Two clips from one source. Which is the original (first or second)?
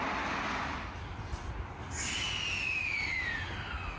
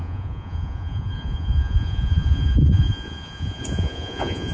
first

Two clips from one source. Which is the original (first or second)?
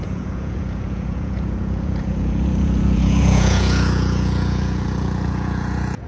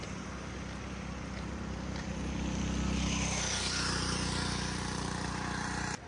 second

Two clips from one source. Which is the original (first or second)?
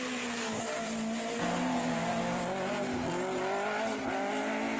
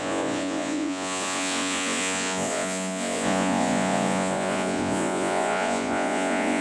first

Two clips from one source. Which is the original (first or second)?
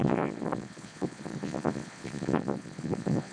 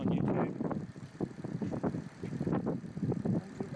second